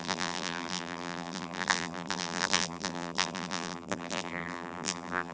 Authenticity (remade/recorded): remade